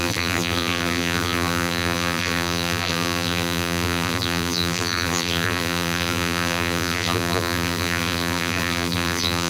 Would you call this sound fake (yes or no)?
yes